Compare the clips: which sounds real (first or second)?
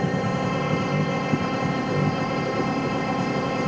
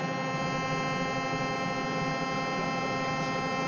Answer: second